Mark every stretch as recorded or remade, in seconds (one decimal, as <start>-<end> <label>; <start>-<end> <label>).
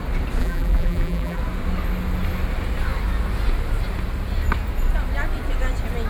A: 0.0-0.4 recorded; 0.4-1.4 remade; 1.4-6.1 recorded